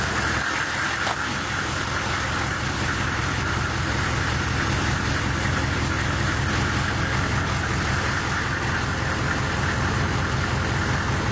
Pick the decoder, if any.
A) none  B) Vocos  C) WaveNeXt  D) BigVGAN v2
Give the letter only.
A